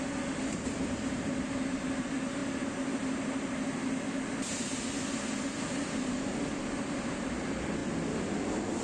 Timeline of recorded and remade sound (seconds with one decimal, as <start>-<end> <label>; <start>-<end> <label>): 0.0-8.8 recorded